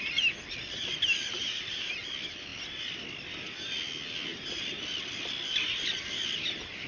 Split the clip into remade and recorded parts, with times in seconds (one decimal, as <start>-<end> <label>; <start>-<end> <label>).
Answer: 0.0-1.4 recorded; 1.4-2.0 remade; 2.0-6.9 recorded

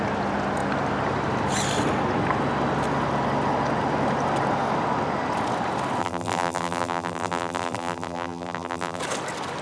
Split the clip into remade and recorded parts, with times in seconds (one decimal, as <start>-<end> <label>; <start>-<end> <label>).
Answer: 0.0-6.0 recorded; 6.0-9.0 remade; 9.0-9.6 recorded

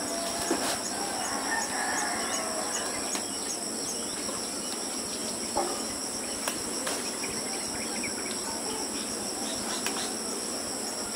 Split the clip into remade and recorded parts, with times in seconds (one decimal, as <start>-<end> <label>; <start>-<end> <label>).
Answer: 0.0-11.2 recorded